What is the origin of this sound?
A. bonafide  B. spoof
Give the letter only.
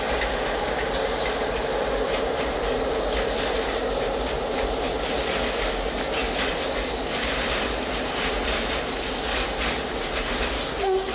A